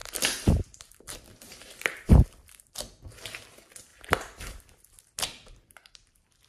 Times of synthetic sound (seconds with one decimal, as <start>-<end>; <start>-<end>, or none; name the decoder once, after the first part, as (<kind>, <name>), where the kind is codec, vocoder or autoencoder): 0.0-2.6 (vocoder, BigVGAN v2); 3.9-4.9